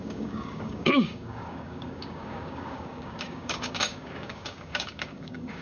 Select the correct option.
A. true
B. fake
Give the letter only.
B